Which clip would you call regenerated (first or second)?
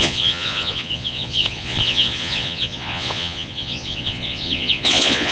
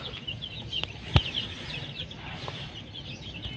first